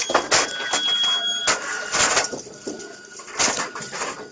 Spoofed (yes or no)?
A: no